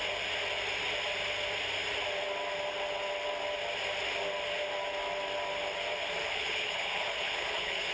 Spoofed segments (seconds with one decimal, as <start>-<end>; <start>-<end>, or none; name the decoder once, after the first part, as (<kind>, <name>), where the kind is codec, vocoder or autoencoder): 6.2-7.9 (codec, HILCodec)